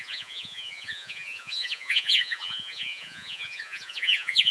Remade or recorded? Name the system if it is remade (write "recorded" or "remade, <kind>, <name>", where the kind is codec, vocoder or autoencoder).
remade, vocoder, Vocos